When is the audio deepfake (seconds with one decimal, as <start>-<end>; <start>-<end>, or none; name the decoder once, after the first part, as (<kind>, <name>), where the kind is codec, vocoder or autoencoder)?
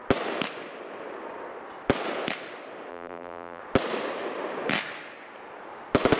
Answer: 2.9-3.6 (vocoder, BigVGAN v2)